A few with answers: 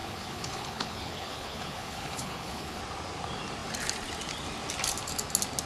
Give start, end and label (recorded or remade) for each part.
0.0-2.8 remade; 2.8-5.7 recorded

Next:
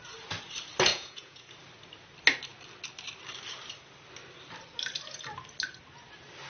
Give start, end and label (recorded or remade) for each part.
0.0-0.9 recorded; 0.9-1.5 remade; 1.5-6.5 recorded

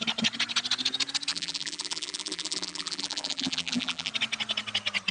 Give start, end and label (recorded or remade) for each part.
0.0-1.3 recorded; 1.3-4.1 remade; 4.1-5.1 recorded

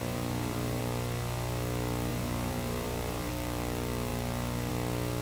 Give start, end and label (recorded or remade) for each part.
0.0-0.8 remade; 0.8-2.1 recorded; 2.1-3.3 remade; 3.3-5.2 recorded

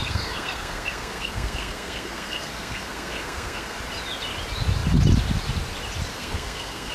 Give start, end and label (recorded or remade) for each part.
0.0-3.8 remade; 3.8-6.1 recorded; 6.1-6.9 remade

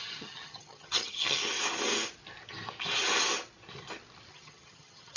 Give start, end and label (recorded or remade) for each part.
0.0-1.4 remade; 1.4-4.3 recorded; 4.3-5.2 remade

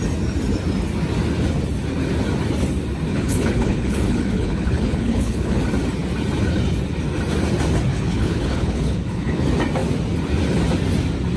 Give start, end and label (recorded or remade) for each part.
0.0-3.1 recorded; 3.1-5.6 remade; 5.6-7.9 recorded; 7.9-9.4 remade; 9.4-11.4 recorded

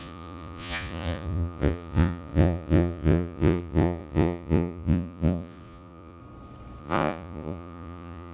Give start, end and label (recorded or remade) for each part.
0.0-6.2 remade; 6.2-6.8 recorded; 6.8-8.3 remade